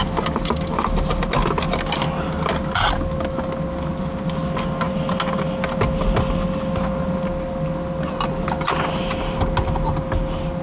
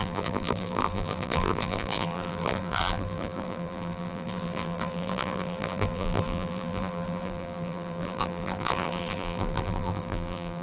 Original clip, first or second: first